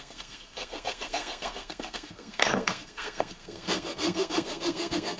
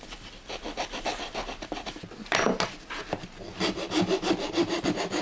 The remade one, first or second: first